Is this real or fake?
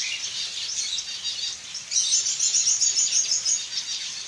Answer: real